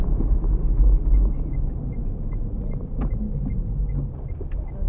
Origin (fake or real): real